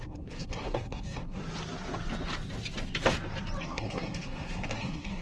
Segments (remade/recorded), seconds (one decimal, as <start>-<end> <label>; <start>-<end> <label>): 0.0-1.4 remade; 1.4-3.6 recorded; 3.6-5.2 remade